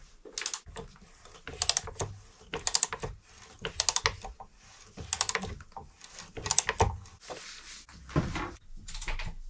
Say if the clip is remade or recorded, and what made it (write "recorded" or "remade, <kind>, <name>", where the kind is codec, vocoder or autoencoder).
recorded